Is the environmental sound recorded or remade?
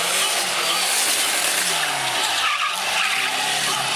recorded